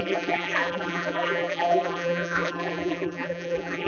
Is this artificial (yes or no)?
yes